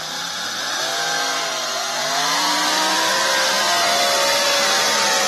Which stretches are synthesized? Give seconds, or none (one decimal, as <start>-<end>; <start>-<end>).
none